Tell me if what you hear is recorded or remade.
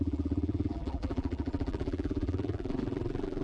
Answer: remade